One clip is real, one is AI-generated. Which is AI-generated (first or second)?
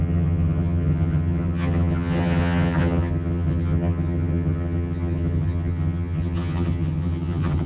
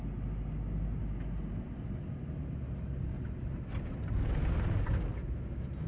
first